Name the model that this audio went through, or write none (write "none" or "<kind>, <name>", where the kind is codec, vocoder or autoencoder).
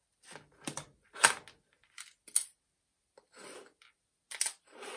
none